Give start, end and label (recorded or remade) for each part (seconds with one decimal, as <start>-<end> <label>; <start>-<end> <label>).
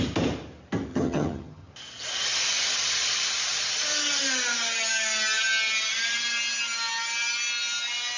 0.0-0.9 recorded; 0.9-1.7 remade; 1.7-8.2 recorded